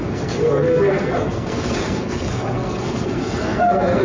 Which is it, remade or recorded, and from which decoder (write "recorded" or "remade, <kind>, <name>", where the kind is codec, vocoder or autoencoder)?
remade, codec, SNAC